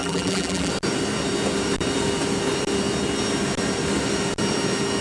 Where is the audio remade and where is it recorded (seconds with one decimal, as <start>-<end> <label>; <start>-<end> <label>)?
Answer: 0.0-0.7 remade; 0.7-5.0 recorded